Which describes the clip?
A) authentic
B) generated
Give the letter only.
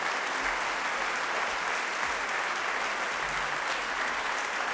A